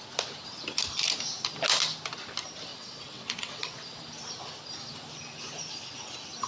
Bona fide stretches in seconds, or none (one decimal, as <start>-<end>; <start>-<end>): 0.0-2.7; 4.0-6.5